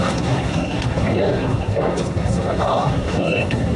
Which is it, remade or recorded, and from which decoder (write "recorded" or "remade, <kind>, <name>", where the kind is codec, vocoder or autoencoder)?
remade, codec, SNAC